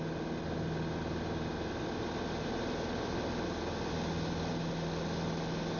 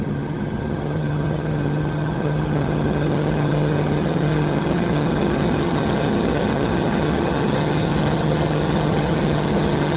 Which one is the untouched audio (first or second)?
first